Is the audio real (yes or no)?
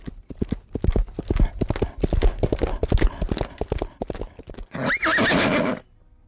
yes